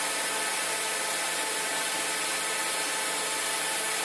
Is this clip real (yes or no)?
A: yes